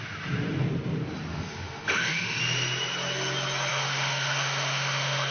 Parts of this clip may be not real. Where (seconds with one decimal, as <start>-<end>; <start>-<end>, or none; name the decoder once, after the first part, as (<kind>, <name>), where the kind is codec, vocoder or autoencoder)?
1.3-2.4 (autoencoder, DAC-VAE); 3.7-5.3

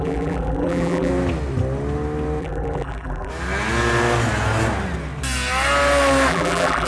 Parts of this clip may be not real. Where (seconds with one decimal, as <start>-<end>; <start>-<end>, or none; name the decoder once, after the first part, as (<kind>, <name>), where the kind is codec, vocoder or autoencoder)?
0.0-1.1 (vocoder, BigVGAN v2); 2.4-3.3; 6.3-6.9

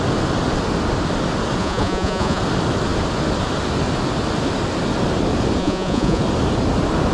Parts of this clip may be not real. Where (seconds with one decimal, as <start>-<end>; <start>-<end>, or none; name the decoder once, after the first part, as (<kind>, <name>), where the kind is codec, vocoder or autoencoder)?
1.6-2.4 (vocoder, Vocos); 5.6-6.2

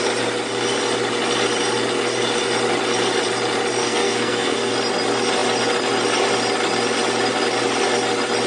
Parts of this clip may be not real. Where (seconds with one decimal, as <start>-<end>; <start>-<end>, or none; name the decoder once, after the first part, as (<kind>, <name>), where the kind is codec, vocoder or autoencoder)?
3.8-4.7 (codec, SNAC)